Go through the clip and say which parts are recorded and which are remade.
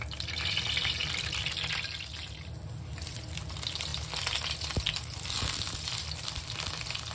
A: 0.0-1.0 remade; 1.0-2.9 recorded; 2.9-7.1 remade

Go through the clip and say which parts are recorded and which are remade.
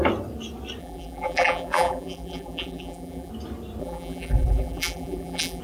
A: 0.0-0.8 recorded; 0.8-3.3 remade; 3.3-3.8 recorded; 3.8-5.6 remade